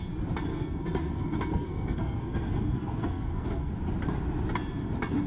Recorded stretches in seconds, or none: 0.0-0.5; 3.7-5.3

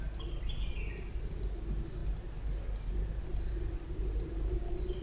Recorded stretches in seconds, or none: 0.0-5.0

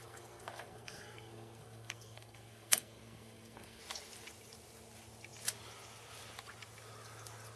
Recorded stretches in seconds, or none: 3.8-7.6

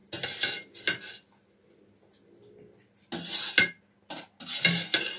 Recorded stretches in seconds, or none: 0.0-5.2

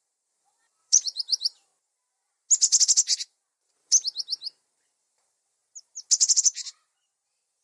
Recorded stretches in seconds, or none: 1.7-5.0; 5.6-6.4

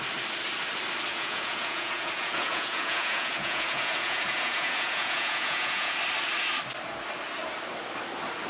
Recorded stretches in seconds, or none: 0.0-1.1; 6.0-8.5

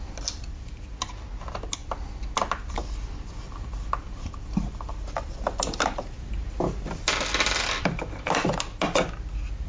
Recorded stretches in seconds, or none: 0.0-9.7